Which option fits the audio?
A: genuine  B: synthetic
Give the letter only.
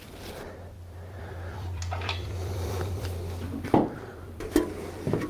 B